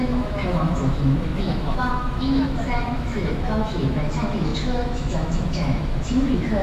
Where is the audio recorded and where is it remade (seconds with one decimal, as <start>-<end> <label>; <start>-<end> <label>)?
0.0-6.6 remade